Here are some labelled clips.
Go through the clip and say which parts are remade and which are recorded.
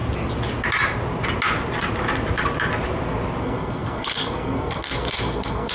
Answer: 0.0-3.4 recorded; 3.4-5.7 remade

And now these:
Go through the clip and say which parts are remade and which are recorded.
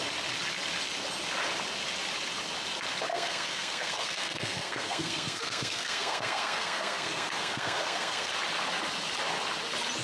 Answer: 0.0-3.1 recorded; 3.1-8.3 remade; 8.3-10.0 recorded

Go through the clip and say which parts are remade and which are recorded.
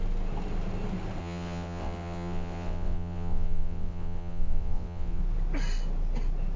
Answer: 0.0-1.2 recorded; 1.2-5.2 remade; 5.2-6.6 recorded